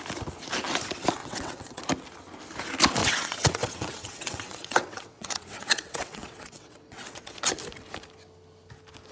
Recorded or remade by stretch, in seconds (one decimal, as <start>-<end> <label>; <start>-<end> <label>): 0.0-1.2 recorded; 1.2-1.8 remade; 1.8-3.0 recorded; 3.0-7.5 remade; 7.5-9.1 recorded